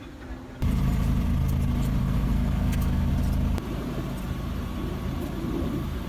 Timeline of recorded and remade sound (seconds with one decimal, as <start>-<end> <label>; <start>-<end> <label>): 0.0-2.0 recorded; 2.0-3.1 remade; 3.1-6.1 recorded